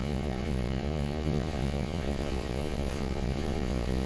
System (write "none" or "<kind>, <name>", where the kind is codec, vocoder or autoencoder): vocoder, Vocos